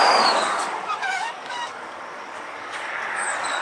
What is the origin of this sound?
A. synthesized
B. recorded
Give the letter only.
A